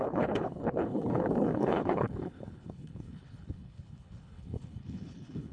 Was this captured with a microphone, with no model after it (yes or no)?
no